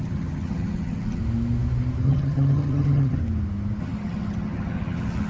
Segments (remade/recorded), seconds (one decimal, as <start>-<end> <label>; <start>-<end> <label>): 0.0-1.2 remade; 1.2-2.0 recorded; 2.0-3.2 remade; 3.2-3.8 recorded; 3.8-5.3 remade